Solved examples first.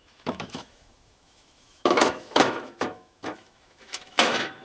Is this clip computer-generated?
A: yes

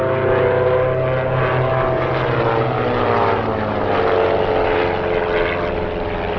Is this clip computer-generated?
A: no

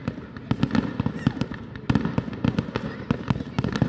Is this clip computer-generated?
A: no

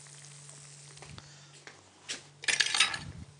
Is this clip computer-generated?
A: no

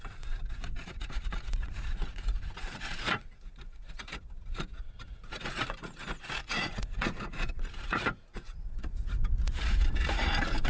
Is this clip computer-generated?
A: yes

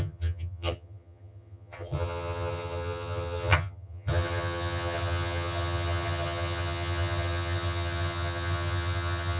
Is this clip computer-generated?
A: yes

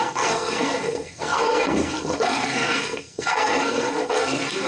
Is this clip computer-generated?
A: yes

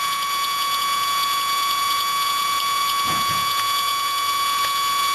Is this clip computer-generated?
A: yes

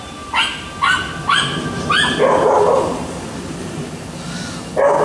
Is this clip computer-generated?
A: no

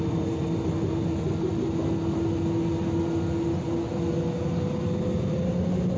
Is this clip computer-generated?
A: no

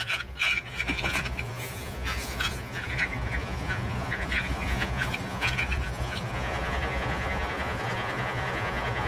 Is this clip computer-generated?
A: yes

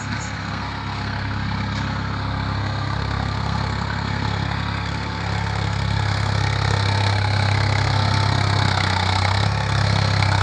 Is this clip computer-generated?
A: yes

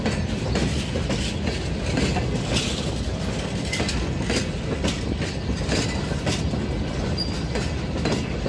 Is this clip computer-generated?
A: no